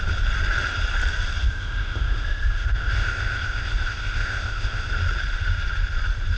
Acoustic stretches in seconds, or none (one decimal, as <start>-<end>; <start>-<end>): 0.0-1.4; 4.9-6.4